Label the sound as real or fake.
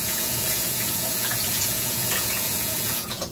fake